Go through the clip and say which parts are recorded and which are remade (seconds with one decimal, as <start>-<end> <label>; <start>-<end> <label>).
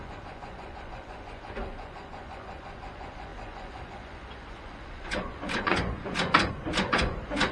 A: 0.0-7.5 remade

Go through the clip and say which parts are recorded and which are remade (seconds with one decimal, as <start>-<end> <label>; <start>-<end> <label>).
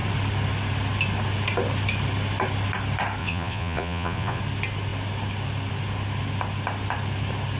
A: 0.0-3.2 recorded; 3.2-4.4 remade; 4.4-7.6 recorded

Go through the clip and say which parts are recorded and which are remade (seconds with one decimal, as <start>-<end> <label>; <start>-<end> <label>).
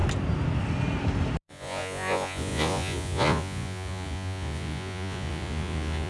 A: 0.0-1.4 recorded; 1.4-6.1 remade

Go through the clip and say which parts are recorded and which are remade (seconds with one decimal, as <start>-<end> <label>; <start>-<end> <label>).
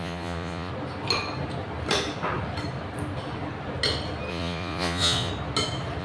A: 0.0-0.7 remade; 0.7-4.3 recorded; 4.3-5.3 remade; 5.3-6.0 recorded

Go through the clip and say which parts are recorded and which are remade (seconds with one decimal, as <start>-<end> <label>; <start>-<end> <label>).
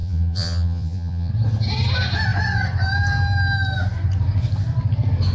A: 0.0-1.3 remade; 1.3-5.3 recorded